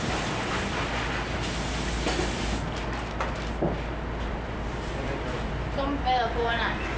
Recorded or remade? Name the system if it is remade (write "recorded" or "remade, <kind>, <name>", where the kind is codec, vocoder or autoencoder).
recorded